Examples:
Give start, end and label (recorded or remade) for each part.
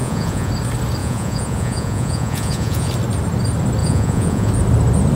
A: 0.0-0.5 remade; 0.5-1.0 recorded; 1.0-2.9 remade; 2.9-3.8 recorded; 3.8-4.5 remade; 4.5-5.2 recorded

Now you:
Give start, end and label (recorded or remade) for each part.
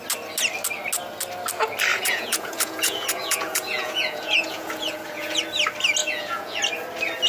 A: 0.0-1.9 recorded; 1.9-5.4 remade; 5.4-6.0 recorded; 6.0-6.6 remade; 6.6-7.3 recorded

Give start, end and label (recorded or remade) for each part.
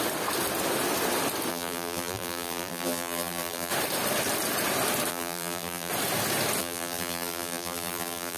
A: 0.0-1.5 recorded; 1.5-3.7 remade; 3.7-5.1 recorded; 5.1-5.9 remade; 5.9-6.6 recorded; 6.6-8.4 remade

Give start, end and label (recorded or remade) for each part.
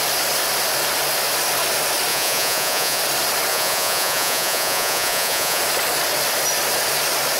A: 0.0-2.1 recorded; 2.1-3.0 remade; 3.0-3.5 recorded; 3.5-5.6 remade; 5.6-7.4 recorded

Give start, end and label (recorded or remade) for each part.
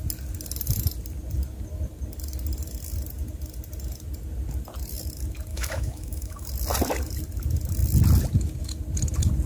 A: 0.0-5.5 recorded; 5.5-6.5 remade; 6.5-9.5 recorded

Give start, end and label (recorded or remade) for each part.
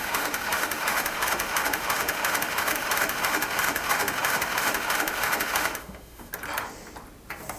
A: 0.0-6.3 remade; 6.3-7.6 recorded